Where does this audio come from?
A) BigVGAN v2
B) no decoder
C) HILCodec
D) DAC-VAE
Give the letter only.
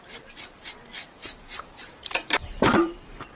A